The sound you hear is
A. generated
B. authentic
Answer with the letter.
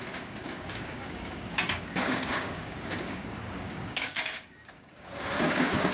A